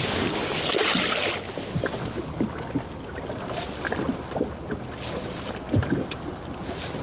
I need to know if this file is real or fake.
real